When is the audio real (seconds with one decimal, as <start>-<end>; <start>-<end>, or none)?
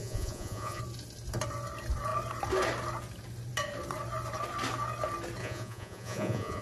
0.8-5.4